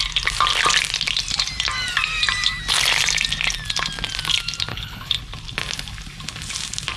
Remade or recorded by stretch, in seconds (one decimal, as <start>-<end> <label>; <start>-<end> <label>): 0.0-4.7 recorded; 4.7-5.2 remade; 5.2-7.0 recorded